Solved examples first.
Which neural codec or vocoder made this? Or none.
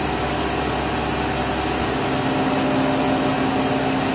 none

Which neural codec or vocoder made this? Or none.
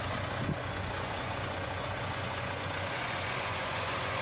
vocoder, Vocos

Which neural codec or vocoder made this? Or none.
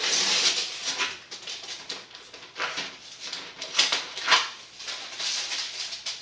none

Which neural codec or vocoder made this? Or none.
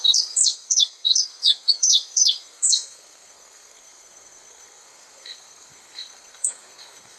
codec, SNAC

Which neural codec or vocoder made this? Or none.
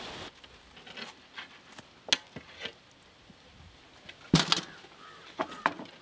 none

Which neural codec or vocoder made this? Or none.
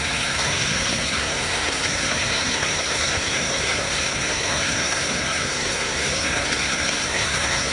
codec, SNAC